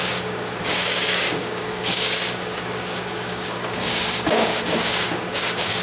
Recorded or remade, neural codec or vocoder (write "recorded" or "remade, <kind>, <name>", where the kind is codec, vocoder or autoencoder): remade, codec, DAC